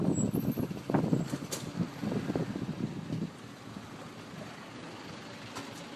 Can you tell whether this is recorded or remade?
recorded